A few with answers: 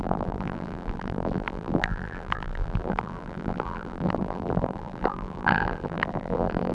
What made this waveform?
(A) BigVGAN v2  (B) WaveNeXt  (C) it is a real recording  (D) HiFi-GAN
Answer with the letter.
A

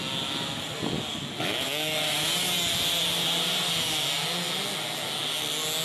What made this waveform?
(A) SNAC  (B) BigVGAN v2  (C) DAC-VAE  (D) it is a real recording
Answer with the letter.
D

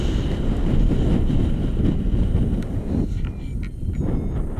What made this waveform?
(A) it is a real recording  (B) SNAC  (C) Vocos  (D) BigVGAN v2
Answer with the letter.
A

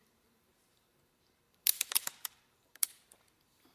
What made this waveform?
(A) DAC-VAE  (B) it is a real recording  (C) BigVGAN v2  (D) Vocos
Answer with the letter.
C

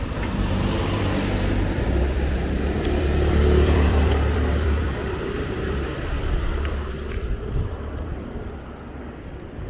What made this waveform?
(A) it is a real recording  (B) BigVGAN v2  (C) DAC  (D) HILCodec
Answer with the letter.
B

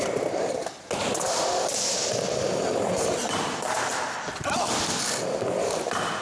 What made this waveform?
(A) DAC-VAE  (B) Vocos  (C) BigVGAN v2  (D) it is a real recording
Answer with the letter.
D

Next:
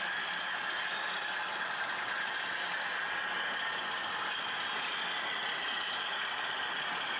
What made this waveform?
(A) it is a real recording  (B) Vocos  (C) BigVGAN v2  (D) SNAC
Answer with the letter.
A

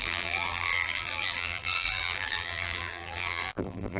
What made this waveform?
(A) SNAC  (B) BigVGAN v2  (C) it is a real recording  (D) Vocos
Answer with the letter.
B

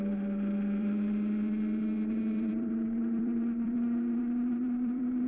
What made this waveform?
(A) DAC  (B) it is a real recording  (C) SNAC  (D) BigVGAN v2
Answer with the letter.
D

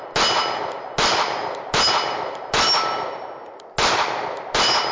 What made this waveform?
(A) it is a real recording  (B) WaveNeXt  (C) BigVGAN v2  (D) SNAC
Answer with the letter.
A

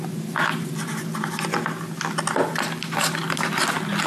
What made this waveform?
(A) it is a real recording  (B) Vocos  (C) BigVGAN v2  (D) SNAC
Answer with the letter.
A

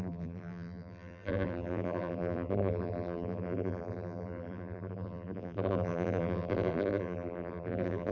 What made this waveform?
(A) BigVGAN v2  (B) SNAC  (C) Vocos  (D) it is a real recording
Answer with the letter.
A